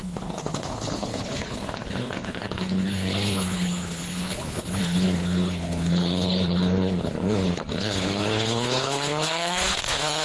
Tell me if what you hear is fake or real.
fake